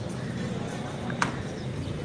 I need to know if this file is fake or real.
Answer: real